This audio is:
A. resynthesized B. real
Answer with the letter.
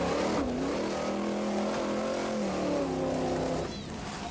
B